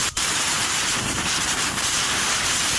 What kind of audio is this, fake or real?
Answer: fake